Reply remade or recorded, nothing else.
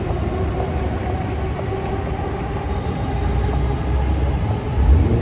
recorded